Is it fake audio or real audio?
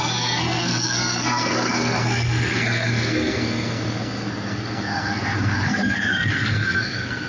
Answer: fake